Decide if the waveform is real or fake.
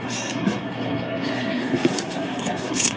fake